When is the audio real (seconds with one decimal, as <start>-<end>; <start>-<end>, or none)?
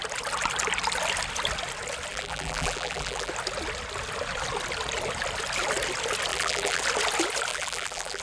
0.0-2.1; 3.3-6.3; 6.8-7.5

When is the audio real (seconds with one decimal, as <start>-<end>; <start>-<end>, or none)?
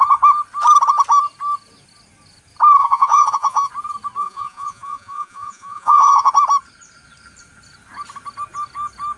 0.0-2.8; 3.7-4.2; 6.3-9.2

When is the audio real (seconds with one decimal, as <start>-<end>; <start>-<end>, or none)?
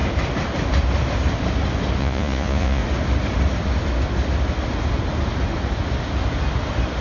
0.0-2.0; 2.8-7.0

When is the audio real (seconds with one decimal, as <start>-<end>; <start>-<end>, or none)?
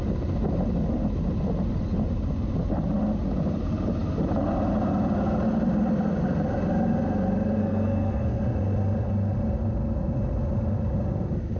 0.0-7.6; 8.4-11.6